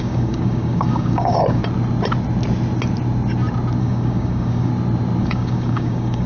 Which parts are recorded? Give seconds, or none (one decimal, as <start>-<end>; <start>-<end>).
1.6-3.8; 4.7-5.2